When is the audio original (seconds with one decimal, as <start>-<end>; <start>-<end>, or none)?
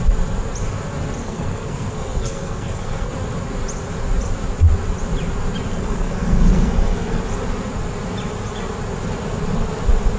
0.0-1.2; 3.1-5.7; 7.2-10.2